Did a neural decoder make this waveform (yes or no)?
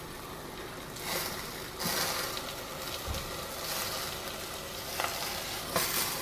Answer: no